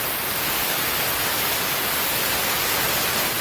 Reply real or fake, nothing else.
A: real